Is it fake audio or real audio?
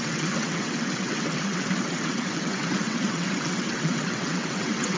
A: fake